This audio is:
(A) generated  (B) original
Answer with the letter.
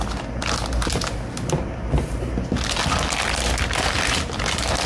B